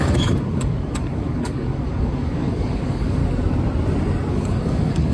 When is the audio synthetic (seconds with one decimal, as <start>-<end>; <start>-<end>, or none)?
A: 0.0-3.2; 4.3-5.1